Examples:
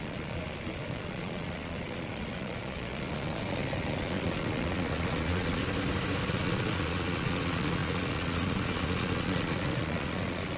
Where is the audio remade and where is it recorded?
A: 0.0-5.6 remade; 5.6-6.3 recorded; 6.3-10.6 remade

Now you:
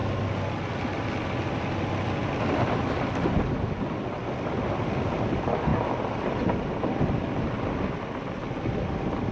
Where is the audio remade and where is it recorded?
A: 0.0-9.3 recorded

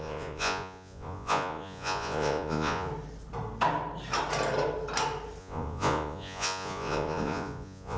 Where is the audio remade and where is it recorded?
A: 0.0-2.9 remade; 2.9-5.4 recorded; 5.4-8.0 remade

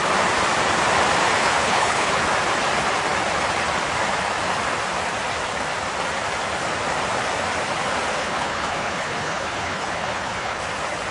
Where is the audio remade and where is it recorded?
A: 0.0-1.4 recorded; 1.4-2.1 remade; 2.1-8.2 recorded; 8.2-10.6 remade; 10.6-11.1 recorded

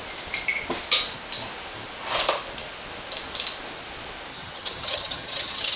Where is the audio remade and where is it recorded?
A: 0.0-4.3 recorded; 4.3-5.8 remade

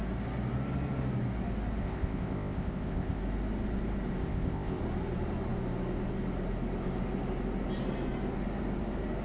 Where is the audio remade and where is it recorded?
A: 0.0-1.8 recorded; 1.8-3.2 remade; 3.2-4.2 recorded; 4.2-4.8 remade; 4.8-9.2 recorded

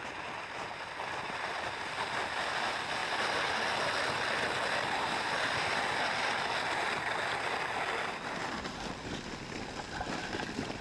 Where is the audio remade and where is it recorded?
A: 0.0-10.8 recorded

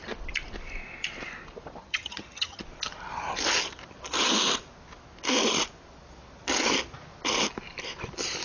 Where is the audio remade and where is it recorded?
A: 0.0-1.8 recorded; 1.8-2.6 remade; 2.6-8.4 recorded